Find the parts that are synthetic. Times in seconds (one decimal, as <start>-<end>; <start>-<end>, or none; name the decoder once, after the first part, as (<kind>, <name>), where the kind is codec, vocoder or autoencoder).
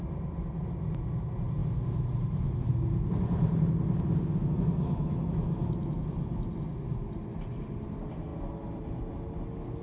none